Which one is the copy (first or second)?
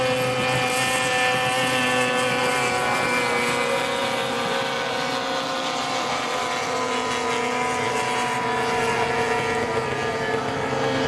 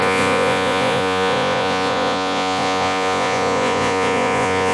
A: second